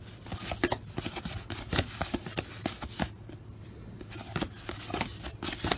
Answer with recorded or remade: recorded